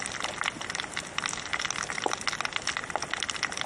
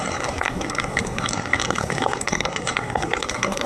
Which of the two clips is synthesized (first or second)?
second